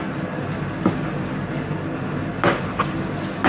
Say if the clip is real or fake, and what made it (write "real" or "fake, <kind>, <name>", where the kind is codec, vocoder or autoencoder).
real